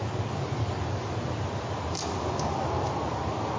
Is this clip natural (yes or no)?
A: yes